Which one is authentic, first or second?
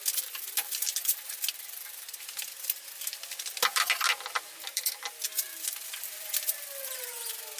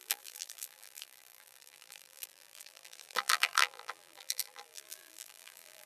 first